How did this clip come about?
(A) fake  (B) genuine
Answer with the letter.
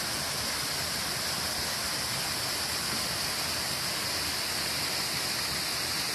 B